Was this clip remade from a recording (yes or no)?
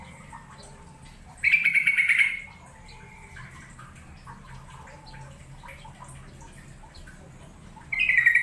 no